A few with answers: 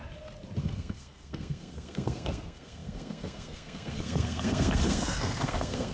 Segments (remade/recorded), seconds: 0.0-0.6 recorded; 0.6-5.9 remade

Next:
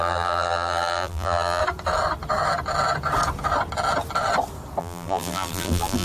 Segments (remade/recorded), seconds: 0.0-1.6 remade; 1.6-4.8 recorded; 4.8-6.0 remade

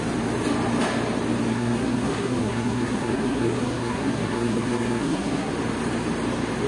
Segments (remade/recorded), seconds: 0.0-1.5 recorded; 1.5-5.5 remade; 5.5-6.7 recorded

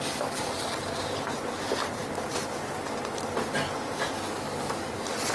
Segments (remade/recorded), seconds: 0.0-2.0 recorded; 2.0-2.6 remade; 2.6-5.3 recorded